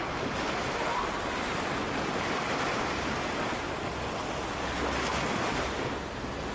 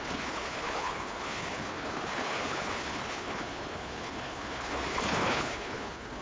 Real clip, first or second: first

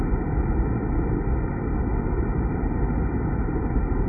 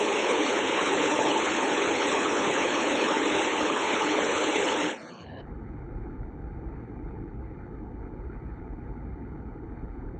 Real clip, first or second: first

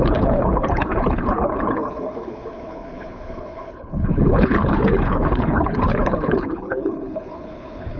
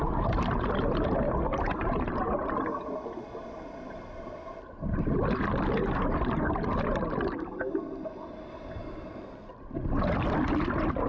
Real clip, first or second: second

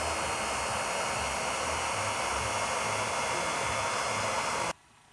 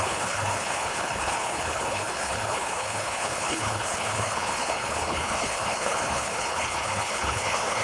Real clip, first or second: first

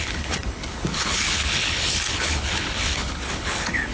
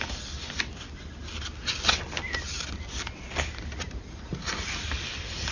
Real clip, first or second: second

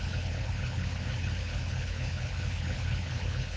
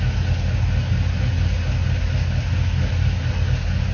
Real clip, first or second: second